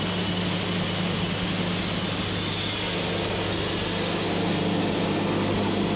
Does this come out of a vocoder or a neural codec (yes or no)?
no